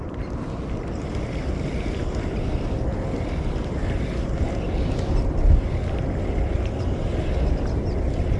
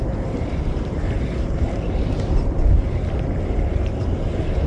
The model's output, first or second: second